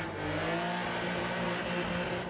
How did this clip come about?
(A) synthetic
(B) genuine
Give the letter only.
B